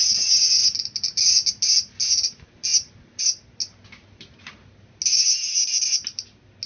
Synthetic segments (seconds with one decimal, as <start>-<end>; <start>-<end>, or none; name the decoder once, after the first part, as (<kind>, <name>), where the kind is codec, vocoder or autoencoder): none